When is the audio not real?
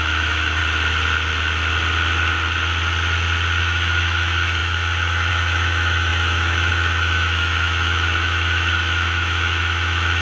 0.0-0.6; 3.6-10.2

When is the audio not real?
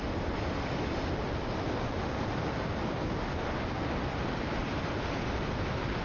none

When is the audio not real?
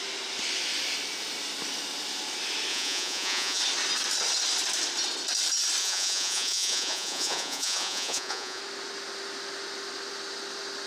2.7-3.6; 5.8-8.6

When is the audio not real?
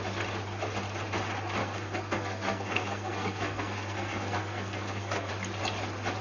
1.6-5.3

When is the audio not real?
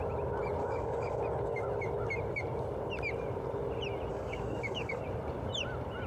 0.6-1.2; 4.1-5.0